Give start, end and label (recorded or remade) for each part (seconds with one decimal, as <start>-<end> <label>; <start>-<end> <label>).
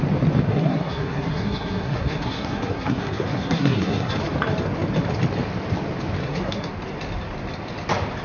0.0-0.5 recorded; 0.5-4.1 remade; 4.1-6.2 recorded; 6.2-6.7 remade; 6.7-8.2 recorded